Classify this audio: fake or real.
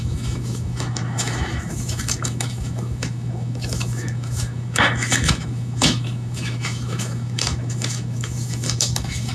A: fake